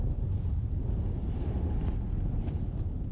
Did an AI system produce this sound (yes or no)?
no